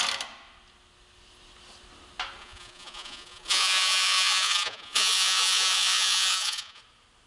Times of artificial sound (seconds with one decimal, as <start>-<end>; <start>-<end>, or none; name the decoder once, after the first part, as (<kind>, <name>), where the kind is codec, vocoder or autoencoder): 2.4-6.8 (vocoder, Vocos)